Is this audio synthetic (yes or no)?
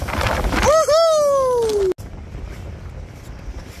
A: no